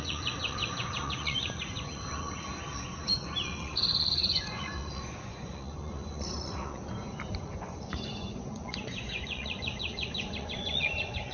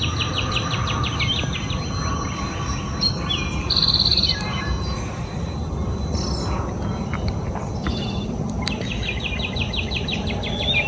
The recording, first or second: second